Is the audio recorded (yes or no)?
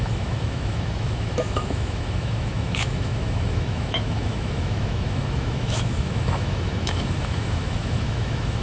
no